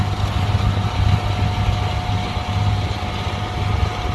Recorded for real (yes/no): yes